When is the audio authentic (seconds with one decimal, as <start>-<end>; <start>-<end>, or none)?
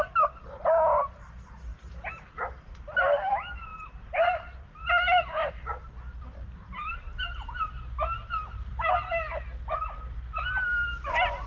0.0-3.7; 4.8-11.5